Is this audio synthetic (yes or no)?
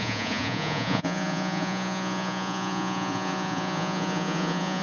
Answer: yes